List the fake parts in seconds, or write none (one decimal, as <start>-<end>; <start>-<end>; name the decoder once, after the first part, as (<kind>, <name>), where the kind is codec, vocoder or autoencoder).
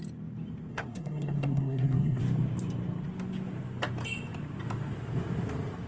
0.7-2.2 (codec, SNAC)